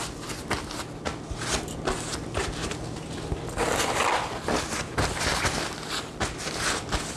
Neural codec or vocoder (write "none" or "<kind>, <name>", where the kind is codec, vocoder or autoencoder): none